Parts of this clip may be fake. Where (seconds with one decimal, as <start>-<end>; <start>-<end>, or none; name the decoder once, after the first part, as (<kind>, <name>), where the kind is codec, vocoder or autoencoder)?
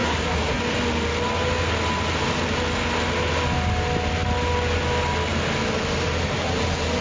0.0-0.6 (codec, SNAC)